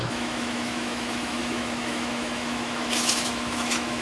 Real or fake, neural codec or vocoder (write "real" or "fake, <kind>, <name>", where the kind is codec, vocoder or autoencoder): fake, autoencoder, DAC-VAE